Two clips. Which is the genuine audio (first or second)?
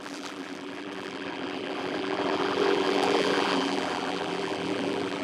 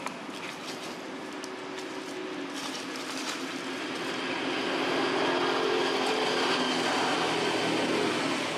second